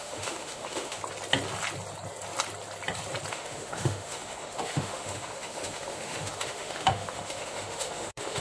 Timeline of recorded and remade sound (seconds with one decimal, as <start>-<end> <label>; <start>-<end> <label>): 0.0-1.0 remade; 1.0-3.3 recorded; 3.3-8.4 remade